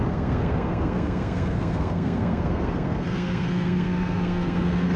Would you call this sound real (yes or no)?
no